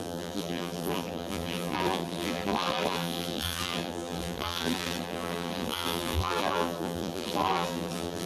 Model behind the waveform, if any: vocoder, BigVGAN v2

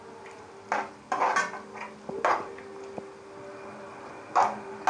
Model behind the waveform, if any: none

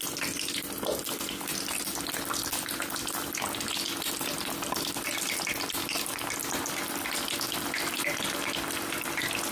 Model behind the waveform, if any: none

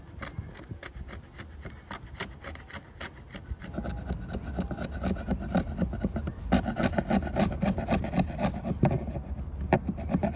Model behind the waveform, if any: none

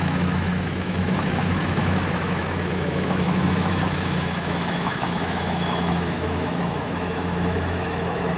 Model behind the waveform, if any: autoencoder, DAC-VAE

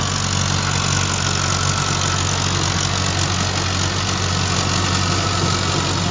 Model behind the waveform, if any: none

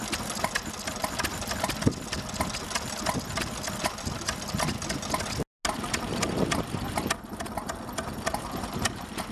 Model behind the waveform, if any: none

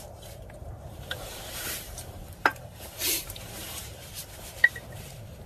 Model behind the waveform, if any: vocoder, BigVGAN v2